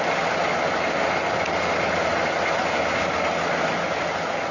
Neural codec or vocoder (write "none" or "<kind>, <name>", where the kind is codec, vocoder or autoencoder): none